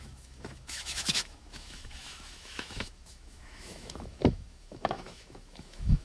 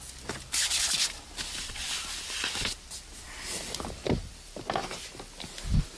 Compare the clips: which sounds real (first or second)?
second